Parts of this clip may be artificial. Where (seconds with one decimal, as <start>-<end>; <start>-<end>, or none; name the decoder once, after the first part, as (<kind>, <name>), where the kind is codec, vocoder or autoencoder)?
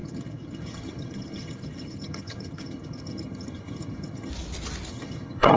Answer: 0.0-4.3 (vocoder, HiFi-GAN); 4.9-5.6